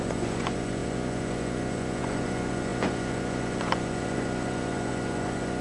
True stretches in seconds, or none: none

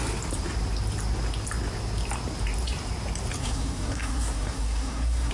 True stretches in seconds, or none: 0.0-3.4

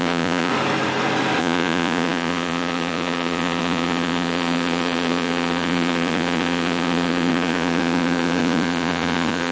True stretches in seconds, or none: 0.5-1.4

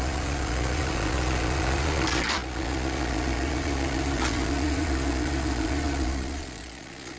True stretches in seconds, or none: none